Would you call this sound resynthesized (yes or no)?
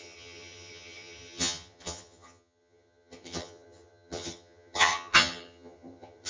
yes